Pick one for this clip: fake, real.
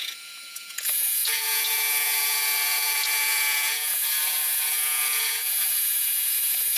fake